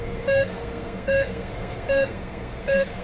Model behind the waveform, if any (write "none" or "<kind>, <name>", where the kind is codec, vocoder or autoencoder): codec, SNAC